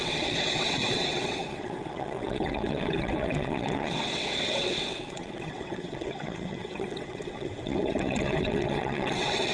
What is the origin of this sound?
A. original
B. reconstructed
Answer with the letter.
B